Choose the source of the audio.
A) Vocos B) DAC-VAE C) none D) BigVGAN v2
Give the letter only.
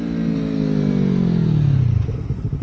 C